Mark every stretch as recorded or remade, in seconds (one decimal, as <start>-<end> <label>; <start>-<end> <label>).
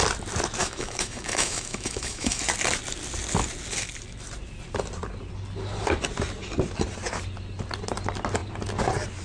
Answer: 0.0-0.6 recorded; 0.6-2.4 remade; 2.4-9.2 recorded